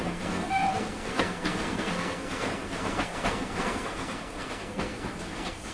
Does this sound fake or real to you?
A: fake